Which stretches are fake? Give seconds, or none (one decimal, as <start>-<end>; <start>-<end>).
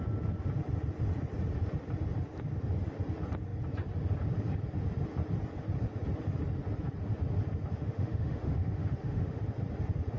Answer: 7.7-9.4